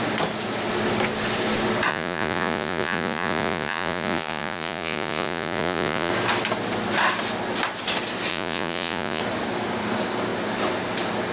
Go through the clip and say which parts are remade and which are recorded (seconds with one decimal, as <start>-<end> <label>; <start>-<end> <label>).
0.0-1.9 recorded; 1.9-6.1 remade; 6.1-8.3 recorded; 8.3-9.2 remade; 9.2-11.3 recorded